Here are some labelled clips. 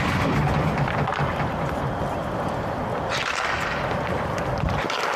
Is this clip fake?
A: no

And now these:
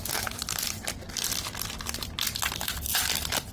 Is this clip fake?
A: no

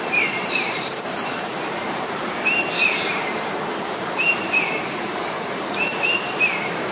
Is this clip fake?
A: yes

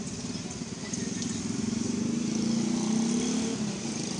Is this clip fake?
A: no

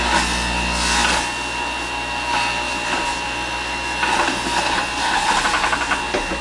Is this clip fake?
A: no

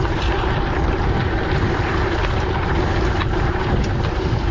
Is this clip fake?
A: yes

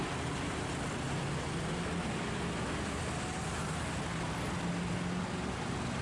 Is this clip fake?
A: no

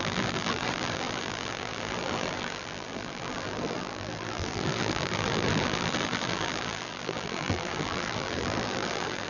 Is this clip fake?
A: yes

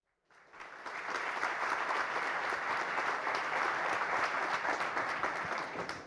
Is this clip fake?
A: yes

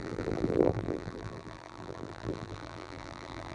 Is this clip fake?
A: yes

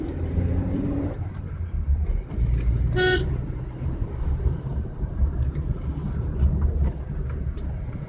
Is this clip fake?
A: yes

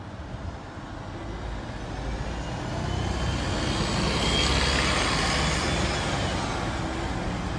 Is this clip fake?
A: no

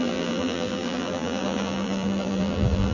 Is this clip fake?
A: yes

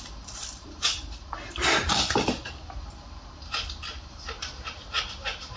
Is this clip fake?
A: yes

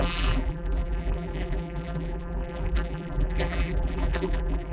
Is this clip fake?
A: yes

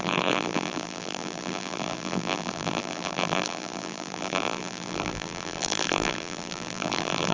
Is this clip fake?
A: yes